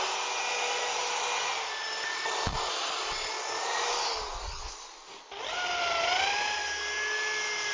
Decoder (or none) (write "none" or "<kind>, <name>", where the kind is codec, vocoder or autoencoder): none